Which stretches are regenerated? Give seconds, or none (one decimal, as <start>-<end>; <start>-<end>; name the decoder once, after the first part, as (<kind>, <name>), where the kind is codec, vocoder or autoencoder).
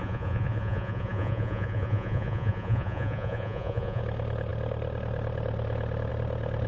0.0-4.0 (vocoder, Vocos)